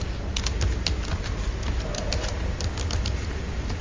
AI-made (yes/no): no